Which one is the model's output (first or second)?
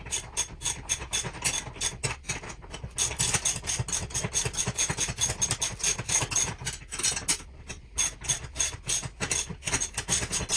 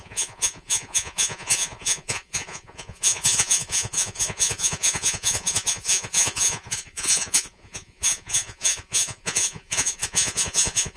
second